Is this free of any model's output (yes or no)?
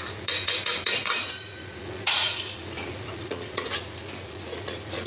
no